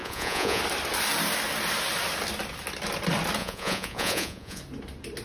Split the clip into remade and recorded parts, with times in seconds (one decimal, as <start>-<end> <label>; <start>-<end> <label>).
0.0-0.6 remade; 0.6-3.4 recorded; 3.4-4.6 remade; 4.6-5.2 recorded